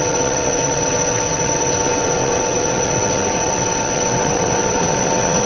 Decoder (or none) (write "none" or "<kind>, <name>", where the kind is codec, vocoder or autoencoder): vocoder, WaveNeXt